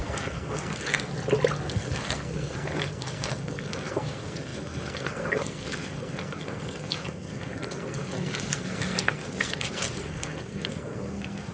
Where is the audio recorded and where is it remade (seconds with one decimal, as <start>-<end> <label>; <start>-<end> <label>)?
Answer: 0.0-1.1 remade; 1.1-1.6 recorded; 1.6-11.5 remade